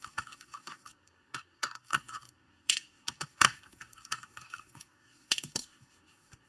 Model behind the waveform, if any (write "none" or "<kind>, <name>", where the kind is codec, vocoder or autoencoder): codec, SNAC